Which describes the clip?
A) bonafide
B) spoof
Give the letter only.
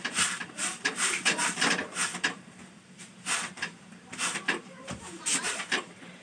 B